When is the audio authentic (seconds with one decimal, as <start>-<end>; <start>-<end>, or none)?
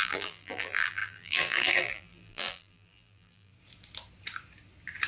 3.5-5.1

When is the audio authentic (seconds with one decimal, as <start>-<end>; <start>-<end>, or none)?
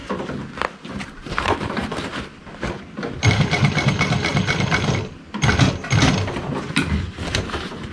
0.0-0.9; 2.1-3.0; 4.3-7.3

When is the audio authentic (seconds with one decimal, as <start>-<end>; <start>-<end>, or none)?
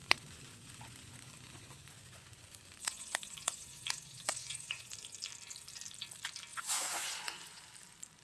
4.9-6.5; 7.6-8.2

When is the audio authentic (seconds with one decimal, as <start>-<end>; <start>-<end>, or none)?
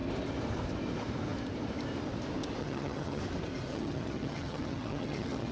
0.0-2.6; 3.2-3.7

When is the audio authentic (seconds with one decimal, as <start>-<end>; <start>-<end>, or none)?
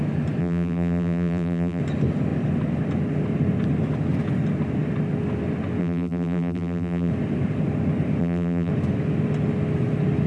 0.0-0.4; 1.8-5.8; 7.1-8.2; 8.7-10.3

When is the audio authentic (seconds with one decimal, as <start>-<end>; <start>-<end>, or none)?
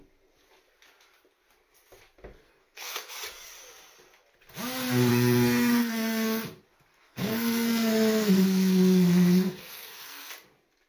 0.0-2.4; 3.1-5.1; 6.4-6.9; 10.3-10.9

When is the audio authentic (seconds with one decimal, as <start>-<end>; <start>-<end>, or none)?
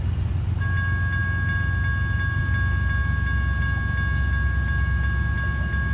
0.0-5.9